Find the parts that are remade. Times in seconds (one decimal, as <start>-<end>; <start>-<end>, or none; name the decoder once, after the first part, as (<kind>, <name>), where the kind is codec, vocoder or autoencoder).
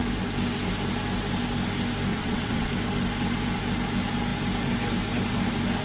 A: 2.1-2.7 (vocoder, WaveNeXt)